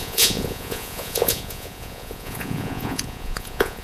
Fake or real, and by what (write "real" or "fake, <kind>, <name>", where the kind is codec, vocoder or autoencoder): fake, vocoder, Vocos